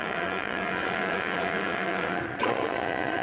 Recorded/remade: remade